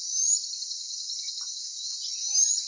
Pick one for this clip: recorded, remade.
remade